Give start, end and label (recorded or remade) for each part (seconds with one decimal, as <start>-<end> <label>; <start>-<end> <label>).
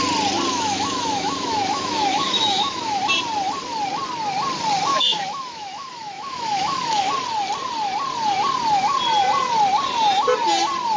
0.0-0.5 recorded; 0.5-3.0 remade; 3.0-4.9 recorded; 4.9-7.1 remade; 7.1-11.0 recorded